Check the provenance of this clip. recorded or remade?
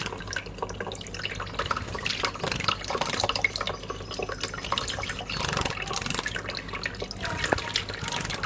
recorded